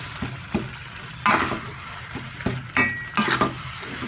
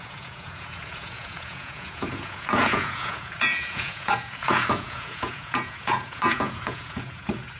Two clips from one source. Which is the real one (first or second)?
first